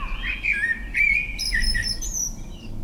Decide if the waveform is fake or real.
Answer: real